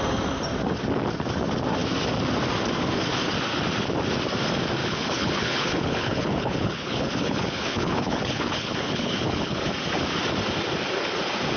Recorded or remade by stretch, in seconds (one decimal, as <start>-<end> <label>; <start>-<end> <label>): 0.0-4.8 recorded; 4.8-9.7 remade; 9.7-11.6 recorded